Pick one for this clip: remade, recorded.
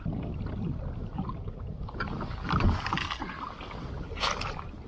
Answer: remade